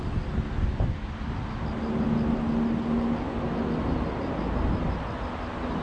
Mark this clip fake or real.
real